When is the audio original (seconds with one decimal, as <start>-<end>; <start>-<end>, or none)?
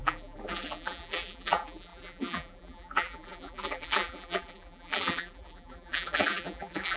none